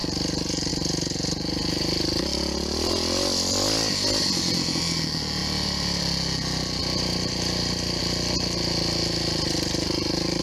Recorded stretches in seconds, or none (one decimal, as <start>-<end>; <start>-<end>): 0.0-5.4; 6.0-6.8; 8.0-10.4